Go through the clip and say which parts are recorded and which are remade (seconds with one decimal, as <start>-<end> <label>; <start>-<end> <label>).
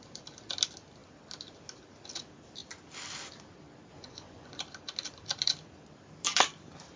0.0-3.9 recorded; 3.9-4.6 remade; 4.6-7.0 recorded